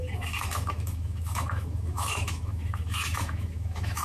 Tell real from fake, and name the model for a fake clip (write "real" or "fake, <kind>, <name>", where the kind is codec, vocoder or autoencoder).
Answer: fake, autoencoder, DAC-VAE